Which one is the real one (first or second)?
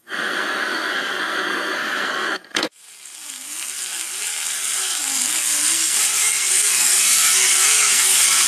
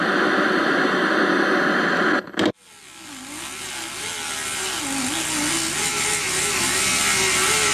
second